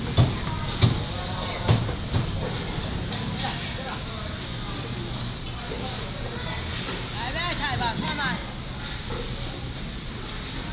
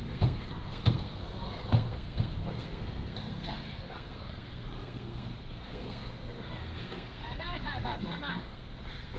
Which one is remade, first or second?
second